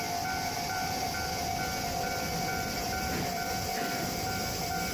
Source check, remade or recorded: remade